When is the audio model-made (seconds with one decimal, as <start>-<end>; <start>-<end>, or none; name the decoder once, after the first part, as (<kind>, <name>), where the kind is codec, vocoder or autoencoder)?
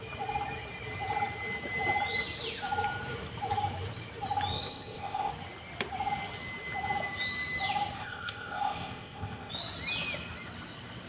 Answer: 4.5-5.3 (codec, ZipCodec); 8.0-9.5